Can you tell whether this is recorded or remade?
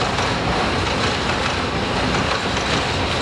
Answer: recorded